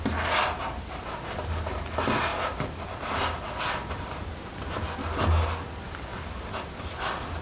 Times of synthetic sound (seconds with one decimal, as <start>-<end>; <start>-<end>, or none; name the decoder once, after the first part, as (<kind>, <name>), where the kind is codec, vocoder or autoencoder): none